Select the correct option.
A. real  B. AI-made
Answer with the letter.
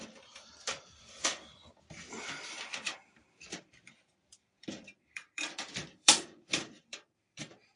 B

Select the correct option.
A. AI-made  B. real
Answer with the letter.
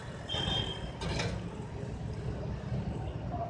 B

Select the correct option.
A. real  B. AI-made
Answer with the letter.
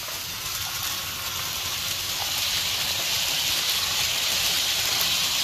A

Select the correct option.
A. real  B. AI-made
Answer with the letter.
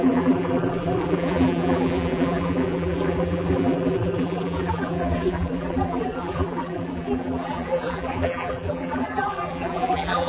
B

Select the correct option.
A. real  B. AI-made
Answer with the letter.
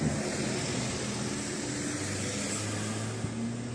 A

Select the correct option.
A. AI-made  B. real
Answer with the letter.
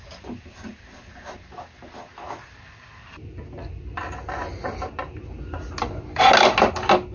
B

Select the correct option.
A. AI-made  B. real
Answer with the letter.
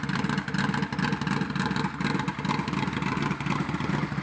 B